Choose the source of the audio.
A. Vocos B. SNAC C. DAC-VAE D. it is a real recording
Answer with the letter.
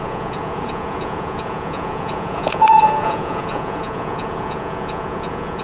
A